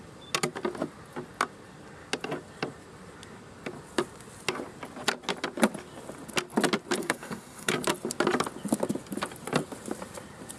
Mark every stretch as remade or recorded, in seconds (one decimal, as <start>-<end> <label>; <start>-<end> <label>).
0.0-7.0 recorded; 7.0-7.7 remade; 7.7-10.6 recorded

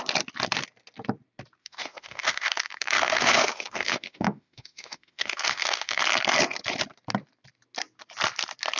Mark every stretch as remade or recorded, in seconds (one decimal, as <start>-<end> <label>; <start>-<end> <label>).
0.0-1.6 recorded; 1.6-6.0 remade; 6.0-8.8 recorded